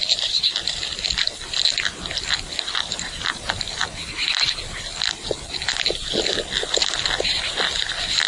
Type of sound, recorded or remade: recorded